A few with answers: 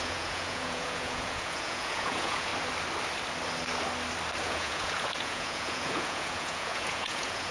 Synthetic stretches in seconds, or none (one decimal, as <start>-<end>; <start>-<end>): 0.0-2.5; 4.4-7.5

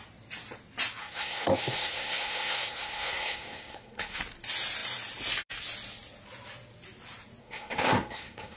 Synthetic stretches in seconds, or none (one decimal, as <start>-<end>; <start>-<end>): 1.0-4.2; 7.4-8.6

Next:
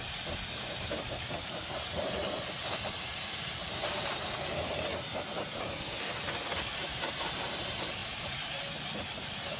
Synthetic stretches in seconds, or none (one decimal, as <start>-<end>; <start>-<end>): 3.6-4.3; 6.8-7.4; 8.0-8.6

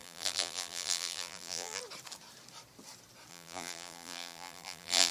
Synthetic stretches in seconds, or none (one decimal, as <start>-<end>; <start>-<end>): 0.0-1.8; 3.3-5.1

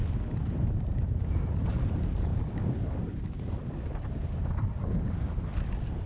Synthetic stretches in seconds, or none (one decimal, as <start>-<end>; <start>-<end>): none

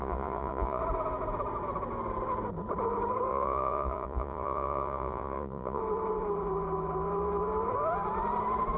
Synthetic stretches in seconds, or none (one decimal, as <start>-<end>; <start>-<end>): 0.0-0.8; 3.3-5.8

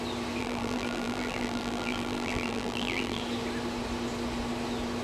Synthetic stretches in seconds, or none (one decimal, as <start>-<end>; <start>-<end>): 0.4-3.2